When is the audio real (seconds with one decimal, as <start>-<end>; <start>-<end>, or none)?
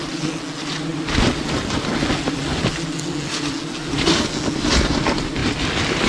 0.0-6.1